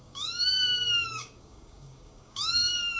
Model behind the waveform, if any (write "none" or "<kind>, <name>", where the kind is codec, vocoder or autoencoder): codec, DAC